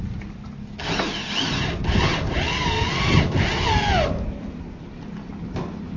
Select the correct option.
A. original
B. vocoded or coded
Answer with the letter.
A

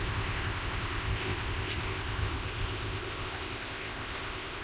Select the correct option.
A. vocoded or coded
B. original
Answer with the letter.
A